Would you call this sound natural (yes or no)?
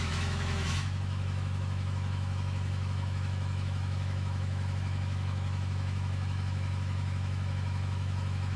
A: no